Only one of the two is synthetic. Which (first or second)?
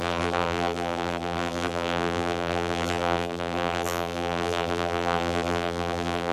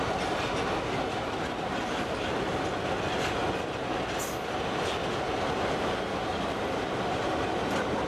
first